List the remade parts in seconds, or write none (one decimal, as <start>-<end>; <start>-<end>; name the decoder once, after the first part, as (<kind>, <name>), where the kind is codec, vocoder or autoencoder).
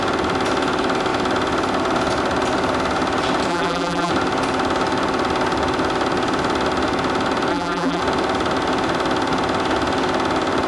3.5-4.1 (vocoder, BigVGAN v2); 7.5-8.0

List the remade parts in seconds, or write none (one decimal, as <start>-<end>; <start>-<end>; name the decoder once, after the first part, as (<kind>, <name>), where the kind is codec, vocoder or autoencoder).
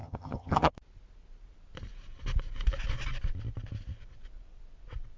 0.0-0.7 (vocoder, HiFi-GAN)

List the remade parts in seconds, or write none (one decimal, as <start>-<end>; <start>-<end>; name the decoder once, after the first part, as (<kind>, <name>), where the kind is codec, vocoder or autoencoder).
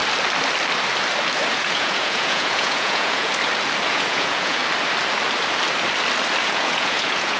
1.5-3.3 (vocoder, Vocos); 3.9-4.6; 6.4-7.4